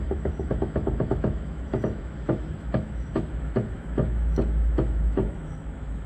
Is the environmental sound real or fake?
fake